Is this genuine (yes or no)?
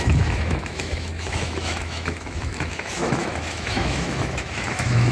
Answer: no